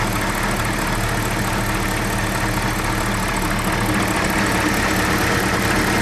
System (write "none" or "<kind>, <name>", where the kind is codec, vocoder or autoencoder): none